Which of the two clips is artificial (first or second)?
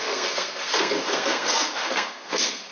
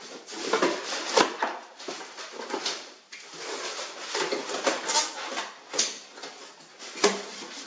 first